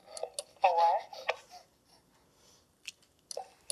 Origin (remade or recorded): recorded